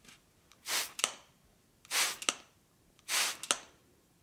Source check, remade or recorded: recorded